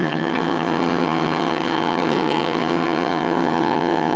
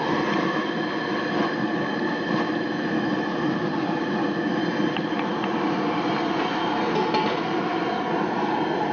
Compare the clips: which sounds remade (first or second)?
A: first